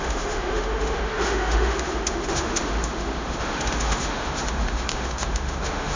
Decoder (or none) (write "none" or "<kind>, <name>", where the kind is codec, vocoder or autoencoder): autoencoder, DAC-VAE